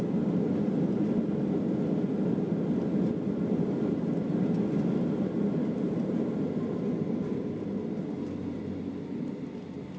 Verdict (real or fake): real